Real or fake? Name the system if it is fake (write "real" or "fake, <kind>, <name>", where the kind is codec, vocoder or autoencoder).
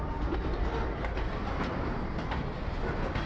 real